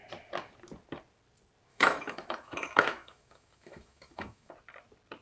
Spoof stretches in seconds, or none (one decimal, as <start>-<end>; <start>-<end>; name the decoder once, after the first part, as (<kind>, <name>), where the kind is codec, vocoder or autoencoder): 1.7-4.5 (autoencoder, DAC-VAE)